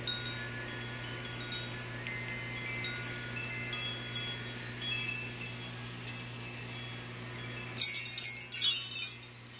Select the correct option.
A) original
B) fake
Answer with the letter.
A